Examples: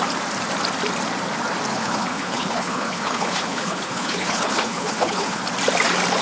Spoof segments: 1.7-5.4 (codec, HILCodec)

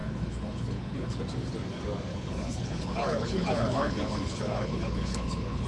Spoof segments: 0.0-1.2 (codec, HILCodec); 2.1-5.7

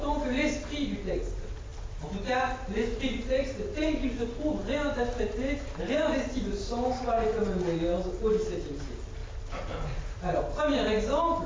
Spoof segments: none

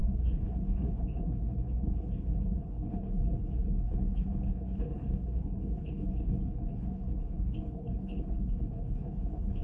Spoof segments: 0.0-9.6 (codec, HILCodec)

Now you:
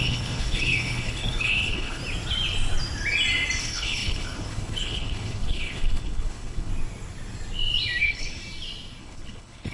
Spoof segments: 0.0-2.0 (codec, HILCodec); 3.6-6.7; 8.0-8.4; 9.0-9.7

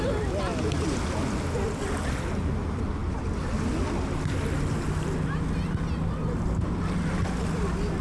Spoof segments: none